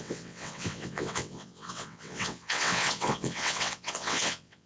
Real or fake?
fake